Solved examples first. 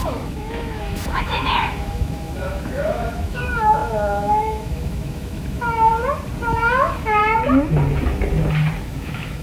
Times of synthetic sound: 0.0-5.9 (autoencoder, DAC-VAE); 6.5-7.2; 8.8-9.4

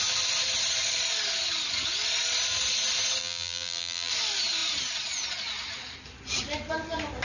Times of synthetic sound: 3.2-4.1 (vocoder, BigVGAN v2)

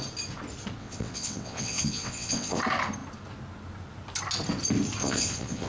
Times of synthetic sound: 0.8-2.6 (vocoder, WaveNeXt); 5.0-5.7

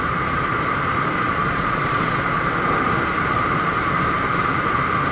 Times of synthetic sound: 1.4-2.4 (vocoder, Vocos)

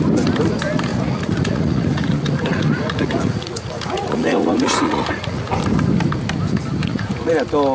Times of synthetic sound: 0.9-5.5 (vocoder, Vocos); 6.8-7.3

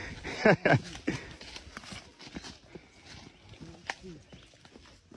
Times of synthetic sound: none